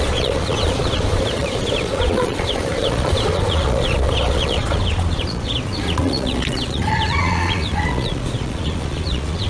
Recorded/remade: remade